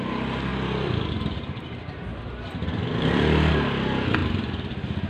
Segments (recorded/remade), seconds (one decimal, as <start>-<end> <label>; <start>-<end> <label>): 0.0-2.1 recorded; 2.1-3.5 remade; 3.5-4.2 recorded; 4.2-5.1 remade